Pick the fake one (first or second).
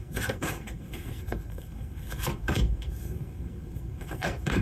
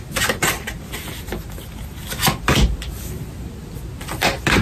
first